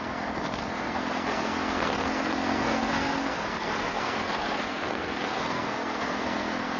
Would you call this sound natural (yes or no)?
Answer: no